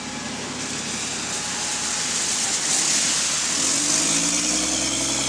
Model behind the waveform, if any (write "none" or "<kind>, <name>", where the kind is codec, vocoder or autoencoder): none